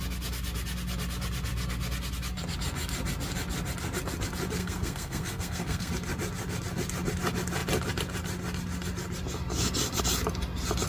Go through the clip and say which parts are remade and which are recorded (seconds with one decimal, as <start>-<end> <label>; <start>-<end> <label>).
0.0-4.6 recorded; 4.6-5.9 remade; 5.9-10.9 recorded